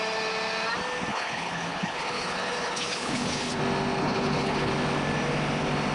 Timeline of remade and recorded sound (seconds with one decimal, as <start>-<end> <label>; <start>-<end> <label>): 0.0-1.1 recorded; 1.1-3.6 remade; 3.6-4.0 recorded; 4.0-4.7 remade; 4.7-5.9 recorded